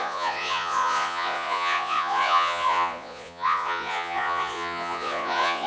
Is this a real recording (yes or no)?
no